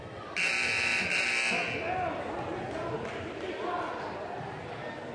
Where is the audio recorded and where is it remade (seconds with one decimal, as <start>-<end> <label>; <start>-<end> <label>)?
0.0-5.1 recorded